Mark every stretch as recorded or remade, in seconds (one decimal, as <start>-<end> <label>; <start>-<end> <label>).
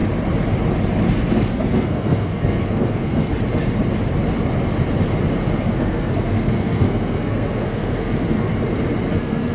0.0-1.1 recorded; 1.1-3.3 remade; 3.3-5.6 recorded; 5.6-8.5 remade; 8.5-9.1 recorded; 9.1-9.5 remade